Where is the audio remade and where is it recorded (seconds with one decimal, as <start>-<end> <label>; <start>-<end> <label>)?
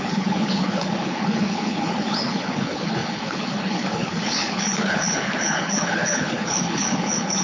0.0-7.4 remade